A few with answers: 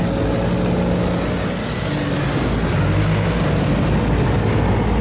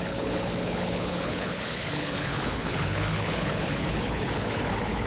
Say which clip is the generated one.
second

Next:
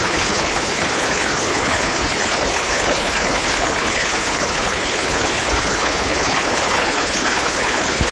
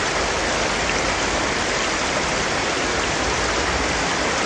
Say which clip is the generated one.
first